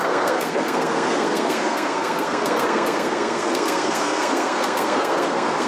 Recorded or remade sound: remade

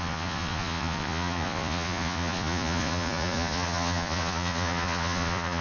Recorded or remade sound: remade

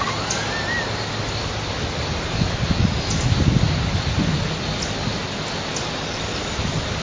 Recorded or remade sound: recorded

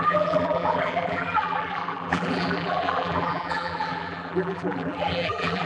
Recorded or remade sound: remade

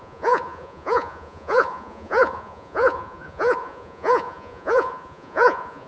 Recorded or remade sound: remade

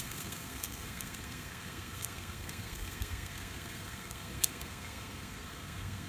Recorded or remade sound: remade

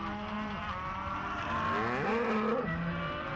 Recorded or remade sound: recorded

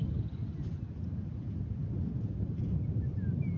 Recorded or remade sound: remade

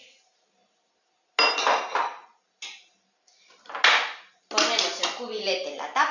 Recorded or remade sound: recorded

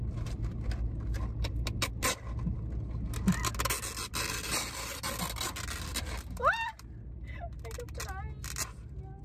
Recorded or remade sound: recorded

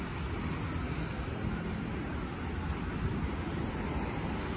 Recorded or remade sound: recorded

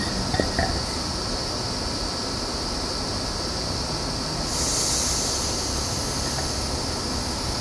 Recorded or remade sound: recorded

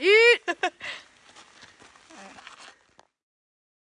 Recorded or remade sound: recorded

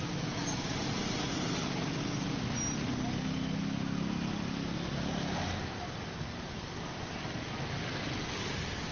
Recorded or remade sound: recorded